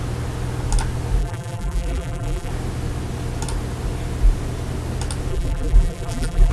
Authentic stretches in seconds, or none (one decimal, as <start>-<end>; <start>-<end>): 0.0-1.2; 2.5-5.3